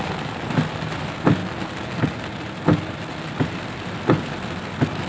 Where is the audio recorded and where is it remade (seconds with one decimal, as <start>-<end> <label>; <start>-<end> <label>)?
0.0-5.1 recorded